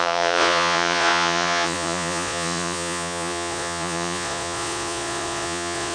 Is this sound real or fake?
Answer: fake